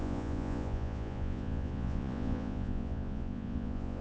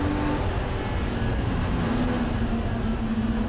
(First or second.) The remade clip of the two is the first